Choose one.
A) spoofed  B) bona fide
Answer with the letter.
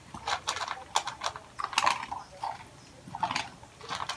B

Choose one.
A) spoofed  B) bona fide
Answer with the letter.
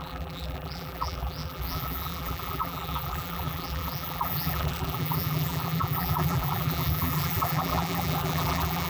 A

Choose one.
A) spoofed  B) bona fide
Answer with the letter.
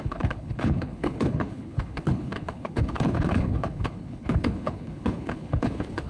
A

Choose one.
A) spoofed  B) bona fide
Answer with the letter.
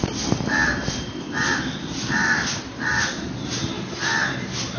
B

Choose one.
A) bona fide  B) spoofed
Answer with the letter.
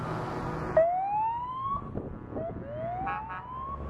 A